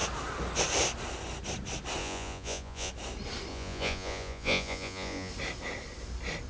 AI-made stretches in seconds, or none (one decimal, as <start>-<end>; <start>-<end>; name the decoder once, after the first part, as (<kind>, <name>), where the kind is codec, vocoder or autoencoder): 2.0-2.9 (vocoder, Vocos); 3.5-5.3